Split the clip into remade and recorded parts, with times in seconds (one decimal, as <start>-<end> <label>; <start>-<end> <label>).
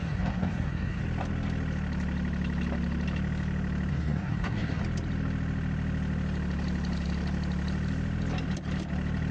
0.0-1.0 remade; 1.0-3.9 recorded; 3.9-4.8 remade; 4.8-9.3 recorded